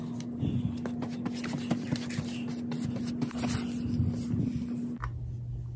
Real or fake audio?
real